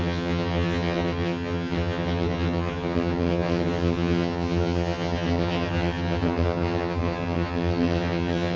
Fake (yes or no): yes